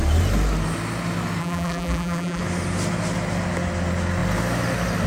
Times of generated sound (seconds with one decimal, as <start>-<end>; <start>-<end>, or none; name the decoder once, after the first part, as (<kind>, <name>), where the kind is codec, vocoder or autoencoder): 1.4-2.4 (vocoder, BigVGAN v2)